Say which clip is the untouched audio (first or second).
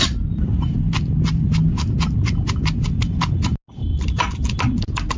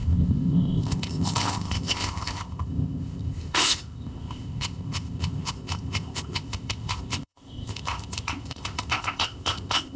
first